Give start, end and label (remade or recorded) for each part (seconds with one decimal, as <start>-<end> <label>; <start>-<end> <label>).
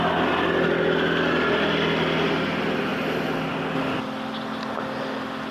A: 0.0-5.5 recorded